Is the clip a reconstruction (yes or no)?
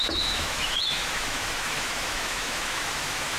yes